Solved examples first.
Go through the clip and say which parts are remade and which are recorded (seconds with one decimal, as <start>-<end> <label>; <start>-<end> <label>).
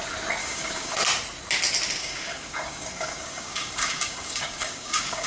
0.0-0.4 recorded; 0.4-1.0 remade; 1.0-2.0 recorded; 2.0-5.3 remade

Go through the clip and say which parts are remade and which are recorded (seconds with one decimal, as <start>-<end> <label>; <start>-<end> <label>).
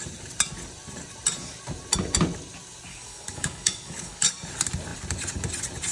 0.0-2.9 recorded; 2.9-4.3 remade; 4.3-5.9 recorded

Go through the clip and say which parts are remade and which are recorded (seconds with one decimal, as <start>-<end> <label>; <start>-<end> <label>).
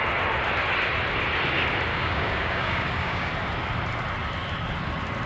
0.0-1.9 recorded; 1.9-3.3 remade; 3.3-5.3 recorded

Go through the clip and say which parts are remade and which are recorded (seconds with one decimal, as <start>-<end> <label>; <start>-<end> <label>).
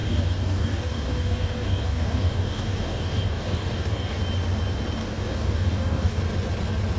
0.0-4.2 remade; 4.2-5.0 recorded; 5.0-6.2 remade; 6.2-7.0 recorded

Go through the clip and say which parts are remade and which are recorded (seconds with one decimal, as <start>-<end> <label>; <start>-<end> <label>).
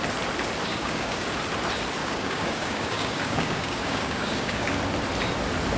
0.0-0.7 recorded; 0.7-1.2 remade; 1.2-2.0 recorded; 2.0-4.7 remade; 4.7-5.8 recorded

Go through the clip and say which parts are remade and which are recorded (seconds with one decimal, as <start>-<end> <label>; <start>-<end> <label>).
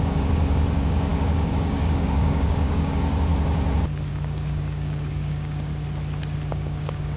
0.0-3.3 remade; 3.3-4.1 recorded; 4.1-5.7 remade; 5.7-6.5 recorded; 6.5-7.2 remade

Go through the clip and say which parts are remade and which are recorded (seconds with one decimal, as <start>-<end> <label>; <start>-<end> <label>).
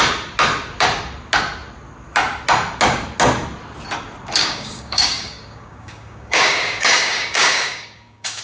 0.0-4.4 recorded; 4.4-8.4 remade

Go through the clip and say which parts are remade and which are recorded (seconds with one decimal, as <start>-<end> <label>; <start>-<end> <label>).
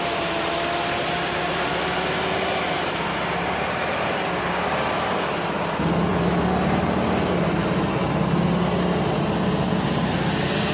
0.0-10.7 recorded